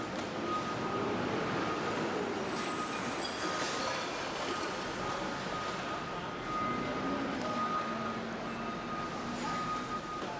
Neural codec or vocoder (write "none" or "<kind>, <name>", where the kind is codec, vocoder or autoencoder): none